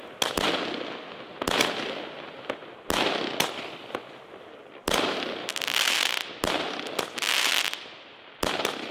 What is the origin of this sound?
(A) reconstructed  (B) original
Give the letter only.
B